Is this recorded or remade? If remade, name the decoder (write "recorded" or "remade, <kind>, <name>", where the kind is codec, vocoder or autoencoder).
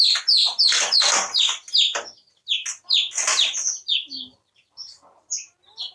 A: recorded